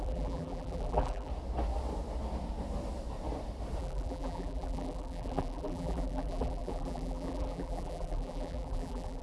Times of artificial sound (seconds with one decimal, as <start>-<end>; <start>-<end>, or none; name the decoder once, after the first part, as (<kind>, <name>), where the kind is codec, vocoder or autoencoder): 0.0-1.3 (vocoder, BigVGAN v2); 3.8-9.2

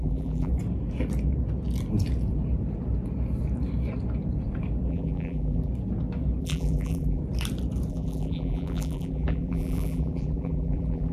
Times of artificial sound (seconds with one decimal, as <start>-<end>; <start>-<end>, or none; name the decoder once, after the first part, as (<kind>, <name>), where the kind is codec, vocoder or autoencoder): 0.0-0.5 (vocoder, BigVGAN v2); 4.9-5.7; 6.4-7.2; 7.9-11.1

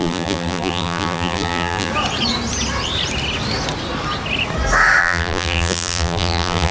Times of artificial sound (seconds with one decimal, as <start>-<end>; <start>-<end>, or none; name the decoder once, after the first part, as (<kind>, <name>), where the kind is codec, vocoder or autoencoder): 0.0-1.9 (vocoder, BigVGAN v2); 5.0-6.7

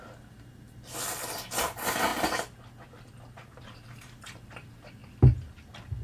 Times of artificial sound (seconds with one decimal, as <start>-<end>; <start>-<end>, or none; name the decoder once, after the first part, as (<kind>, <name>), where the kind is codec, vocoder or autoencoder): 0.0-2.1 (vocoder, BigVGAN v2); 3.6-5.0

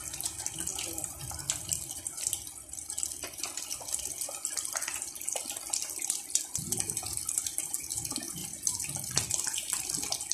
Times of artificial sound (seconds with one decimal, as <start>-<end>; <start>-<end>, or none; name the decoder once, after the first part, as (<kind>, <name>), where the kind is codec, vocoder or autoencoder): 0.7-1.8 (vocoder, BigVGAN v2); 4.9-5.4

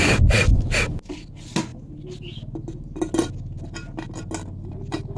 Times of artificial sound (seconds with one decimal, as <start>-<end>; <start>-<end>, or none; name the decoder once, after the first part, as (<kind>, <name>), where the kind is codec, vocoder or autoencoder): none

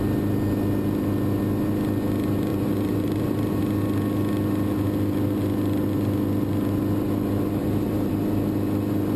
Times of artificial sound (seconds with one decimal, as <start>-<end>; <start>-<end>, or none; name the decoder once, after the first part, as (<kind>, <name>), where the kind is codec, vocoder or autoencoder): 2.5-3.6 (vocoder, BigVGAN v2); 7.6-8.1